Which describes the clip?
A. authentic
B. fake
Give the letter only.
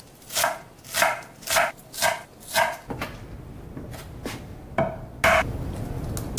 A